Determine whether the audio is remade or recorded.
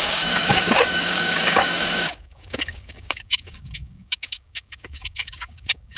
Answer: remade